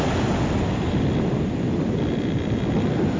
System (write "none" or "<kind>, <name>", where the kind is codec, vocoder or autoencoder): none